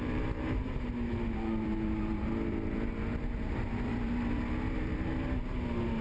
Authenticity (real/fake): fake